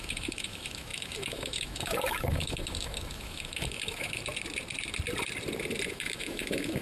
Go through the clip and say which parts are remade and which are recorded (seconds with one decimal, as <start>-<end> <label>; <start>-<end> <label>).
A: 0.0-4.2 remade; 4.2-5.9 recorded; 5.9-6.8 remade